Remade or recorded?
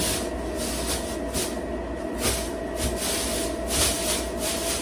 recorded